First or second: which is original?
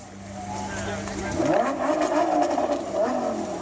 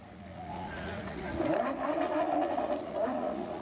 first